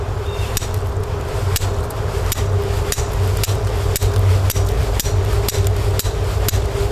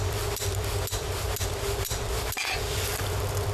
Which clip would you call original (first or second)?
first